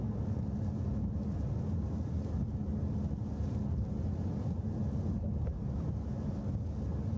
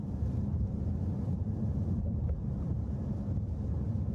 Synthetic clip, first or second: second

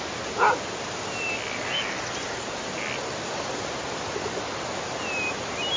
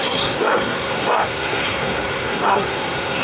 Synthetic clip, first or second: second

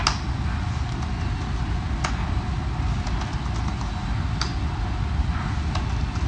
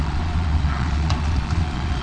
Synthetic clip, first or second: second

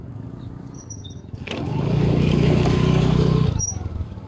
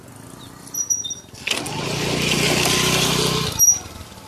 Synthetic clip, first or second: first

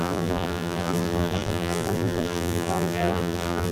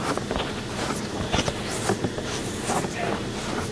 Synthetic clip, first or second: first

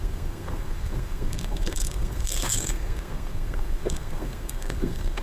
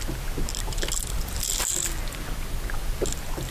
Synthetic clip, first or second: first